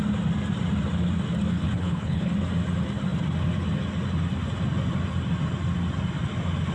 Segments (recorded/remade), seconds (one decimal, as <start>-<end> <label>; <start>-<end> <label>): 0.0-1.5 recorded; 1.5-2.3 remade; 2.3-6.7 recorded